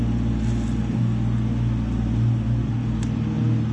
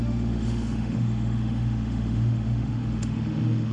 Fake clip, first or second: second